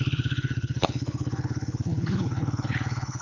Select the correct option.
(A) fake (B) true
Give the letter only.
A